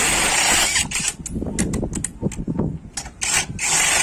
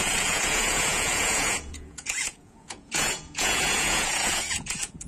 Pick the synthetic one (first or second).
second